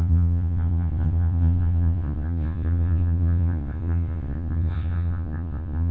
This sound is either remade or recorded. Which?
remade